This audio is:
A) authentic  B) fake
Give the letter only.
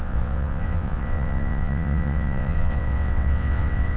B